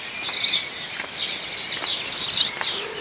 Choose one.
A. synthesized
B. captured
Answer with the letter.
A